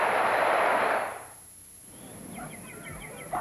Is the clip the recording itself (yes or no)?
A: yes